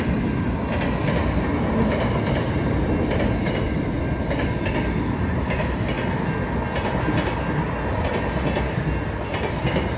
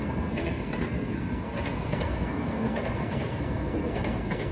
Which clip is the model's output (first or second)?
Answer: second